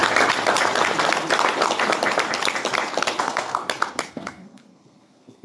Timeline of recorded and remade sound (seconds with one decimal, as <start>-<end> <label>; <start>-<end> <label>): 0.0-3.2 recorded; 3.2-3.6 remade; 3.6-4.1 recorded; 4.1-5.4 remade